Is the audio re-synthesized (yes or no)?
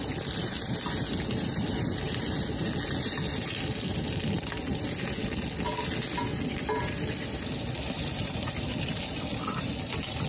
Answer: no